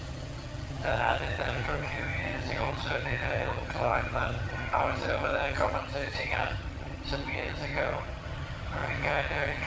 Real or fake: fake